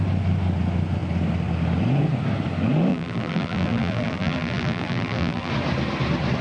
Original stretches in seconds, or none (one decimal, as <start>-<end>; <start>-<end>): 0.0-2.9; 5.5-6.4